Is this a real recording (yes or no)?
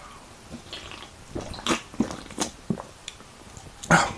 yes